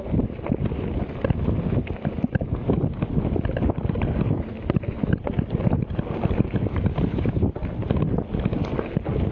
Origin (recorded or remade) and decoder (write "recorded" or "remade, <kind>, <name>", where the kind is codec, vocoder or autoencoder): recorded